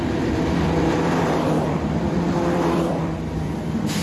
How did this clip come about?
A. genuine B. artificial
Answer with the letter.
B